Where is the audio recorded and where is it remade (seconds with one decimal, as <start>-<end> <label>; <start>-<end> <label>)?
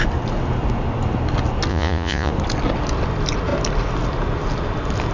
0.0-1.7 recorded; 1.7-2.3 remade; 2.3-5.1 recorded